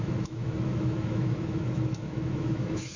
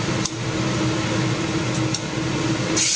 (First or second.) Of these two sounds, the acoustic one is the second